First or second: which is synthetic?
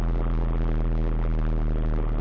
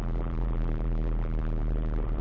second